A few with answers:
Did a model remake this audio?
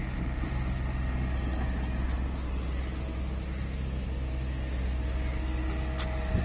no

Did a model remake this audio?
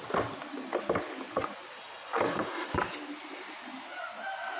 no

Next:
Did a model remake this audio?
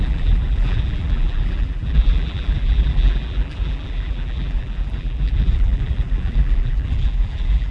yes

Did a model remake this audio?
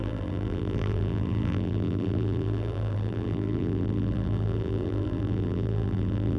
yes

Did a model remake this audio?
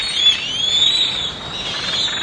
no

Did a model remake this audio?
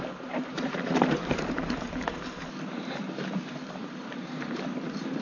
yes